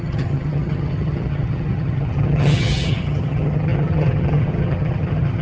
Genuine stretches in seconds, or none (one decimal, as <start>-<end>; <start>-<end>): none